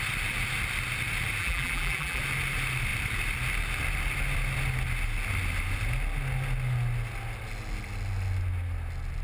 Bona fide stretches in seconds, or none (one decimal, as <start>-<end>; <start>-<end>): 0.0-1.4; 2.2-9.2

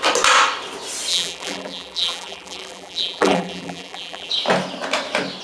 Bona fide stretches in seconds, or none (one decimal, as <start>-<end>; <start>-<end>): 0.0-1.1; 4.3-5.4

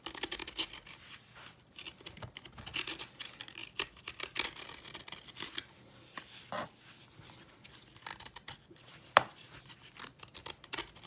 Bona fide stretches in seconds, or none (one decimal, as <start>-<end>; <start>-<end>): 0.0-0.4; 2.0-3.6; 4.1-8.1

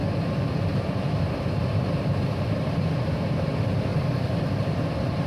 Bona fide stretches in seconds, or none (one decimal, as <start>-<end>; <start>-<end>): 0.0-0.7; 3.5-3.9

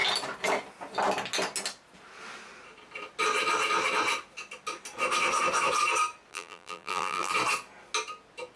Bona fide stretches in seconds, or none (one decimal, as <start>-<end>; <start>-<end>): 0.0-6.3; 7.3-8.6

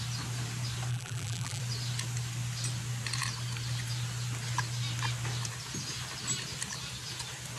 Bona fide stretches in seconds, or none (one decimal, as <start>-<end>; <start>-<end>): 0.0-0.9; 1.6-7.6